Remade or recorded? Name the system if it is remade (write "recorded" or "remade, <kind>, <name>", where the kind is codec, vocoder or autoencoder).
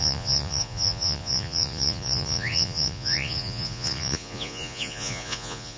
remade, vocoder, Vocos